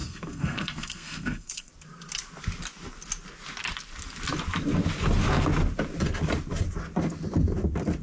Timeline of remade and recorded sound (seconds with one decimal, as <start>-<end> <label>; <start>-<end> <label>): 0.0-1.7 remade; 1.7-8.0 recorded